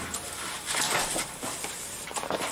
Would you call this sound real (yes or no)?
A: no